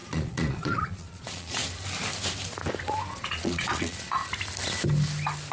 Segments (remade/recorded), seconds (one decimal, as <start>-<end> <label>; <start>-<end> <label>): 0.0-1.6 remade; 1.6-3.1 recorded; 3.1-4.2 remade; 4.2-5.5 recorded